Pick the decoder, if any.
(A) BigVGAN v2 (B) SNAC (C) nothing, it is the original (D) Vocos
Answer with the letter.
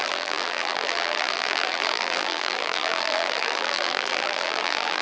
A